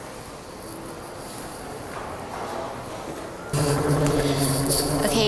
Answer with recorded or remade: recorded